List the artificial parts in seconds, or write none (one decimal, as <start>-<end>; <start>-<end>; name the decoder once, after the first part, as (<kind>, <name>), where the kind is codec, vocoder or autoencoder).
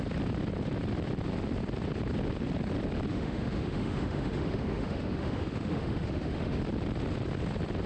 3.1-6.6 (autoencoder, DAC-VAE)